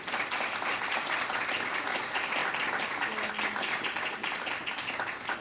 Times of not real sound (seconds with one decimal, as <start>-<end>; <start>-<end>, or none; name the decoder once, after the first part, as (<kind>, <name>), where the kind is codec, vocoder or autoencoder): none